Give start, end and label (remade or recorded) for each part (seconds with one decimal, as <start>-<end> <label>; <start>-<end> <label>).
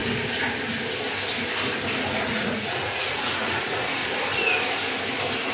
0.0-2.2 recorded; 2.2-4.0 remade; 4.0-5.5 recorded